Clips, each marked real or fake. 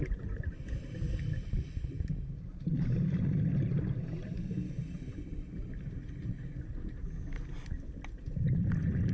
fake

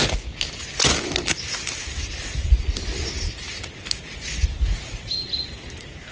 real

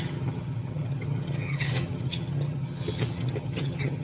fake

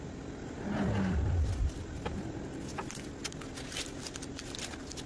real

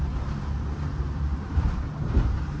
fake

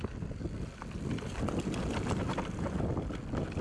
real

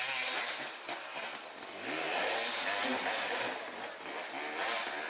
real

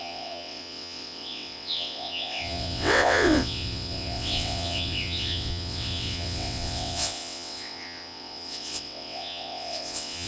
fake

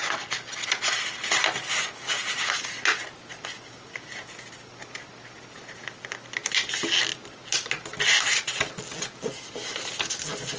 real